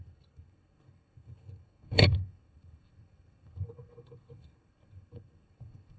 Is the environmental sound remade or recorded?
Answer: remade